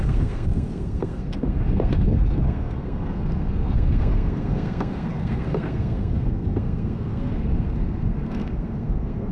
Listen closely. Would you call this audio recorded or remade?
remade